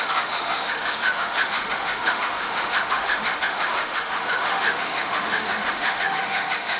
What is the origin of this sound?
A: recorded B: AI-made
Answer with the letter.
B